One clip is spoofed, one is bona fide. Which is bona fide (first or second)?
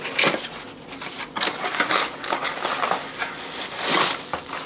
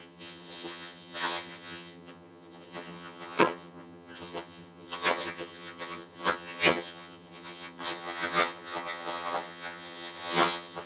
first